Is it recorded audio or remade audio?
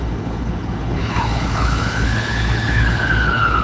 remade